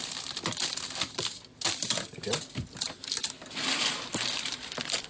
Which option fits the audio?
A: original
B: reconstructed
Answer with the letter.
A